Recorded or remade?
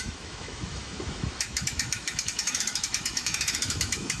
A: remade